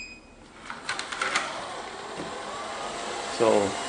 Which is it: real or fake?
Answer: real